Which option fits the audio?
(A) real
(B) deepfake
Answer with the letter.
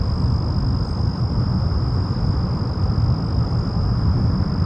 A